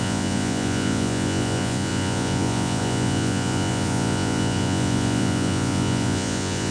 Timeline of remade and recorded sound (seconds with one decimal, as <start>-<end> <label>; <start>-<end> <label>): 0.0-6.7 remade